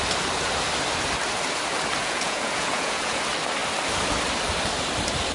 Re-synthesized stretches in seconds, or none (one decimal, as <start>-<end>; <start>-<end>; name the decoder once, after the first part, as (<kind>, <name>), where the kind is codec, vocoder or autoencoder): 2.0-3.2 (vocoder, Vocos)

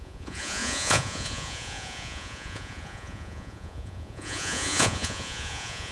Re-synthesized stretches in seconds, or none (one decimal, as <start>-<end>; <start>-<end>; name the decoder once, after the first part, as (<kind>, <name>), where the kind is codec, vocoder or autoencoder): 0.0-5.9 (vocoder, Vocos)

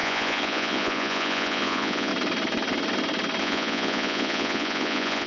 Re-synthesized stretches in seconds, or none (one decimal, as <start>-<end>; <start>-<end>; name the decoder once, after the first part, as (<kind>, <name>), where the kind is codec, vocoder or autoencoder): 0.0-2.1 (vocoder, Vocos); 3.4-5.3

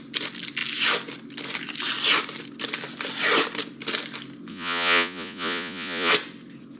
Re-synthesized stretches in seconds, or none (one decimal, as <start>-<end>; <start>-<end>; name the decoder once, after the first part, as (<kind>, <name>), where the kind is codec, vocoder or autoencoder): 4.5-6.1 (vocoder, Vocos)

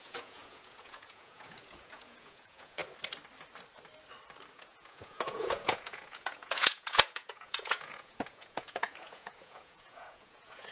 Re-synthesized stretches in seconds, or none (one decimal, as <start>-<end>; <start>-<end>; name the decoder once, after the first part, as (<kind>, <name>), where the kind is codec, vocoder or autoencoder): 0.0-2.8 (vocoder, Vocos); 4.5-10.7

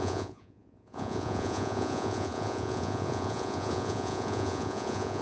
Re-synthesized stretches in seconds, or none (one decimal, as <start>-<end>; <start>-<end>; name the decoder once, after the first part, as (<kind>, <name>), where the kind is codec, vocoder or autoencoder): 0.0-5.2 (vocoder, Vocos)

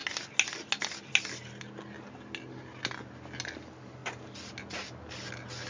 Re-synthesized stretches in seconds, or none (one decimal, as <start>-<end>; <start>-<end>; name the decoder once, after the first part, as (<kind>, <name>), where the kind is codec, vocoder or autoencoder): none